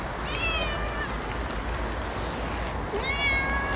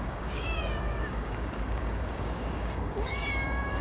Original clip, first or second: first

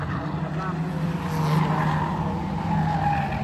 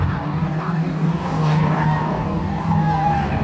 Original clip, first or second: first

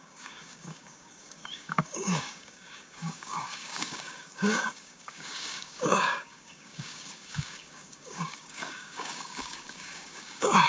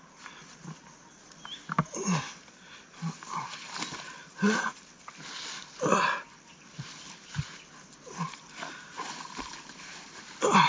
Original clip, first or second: second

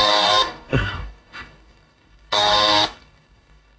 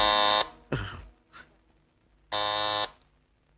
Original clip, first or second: second